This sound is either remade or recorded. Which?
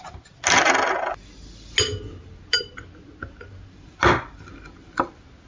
recorded